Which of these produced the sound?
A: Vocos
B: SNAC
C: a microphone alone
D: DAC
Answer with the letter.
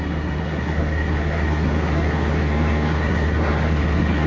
B